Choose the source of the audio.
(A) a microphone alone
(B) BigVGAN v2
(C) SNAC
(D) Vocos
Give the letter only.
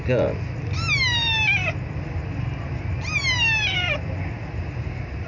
A